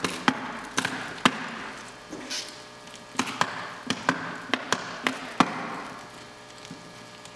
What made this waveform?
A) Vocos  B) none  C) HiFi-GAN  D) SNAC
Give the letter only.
B